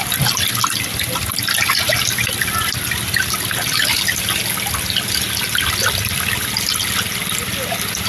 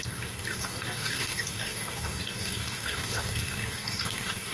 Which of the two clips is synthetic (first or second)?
second